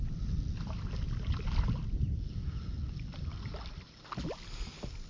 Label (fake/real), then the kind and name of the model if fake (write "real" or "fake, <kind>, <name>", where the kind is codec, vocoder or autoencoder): real